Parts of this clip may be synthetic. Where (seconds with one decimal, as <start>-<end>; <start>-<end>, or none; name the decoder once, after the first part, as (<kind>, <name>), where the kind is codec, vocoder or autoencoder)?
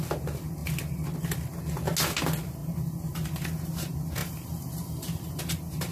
none